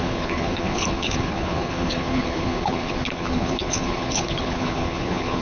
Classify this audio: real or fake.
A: fake